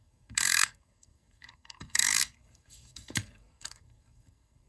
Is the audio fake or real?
fake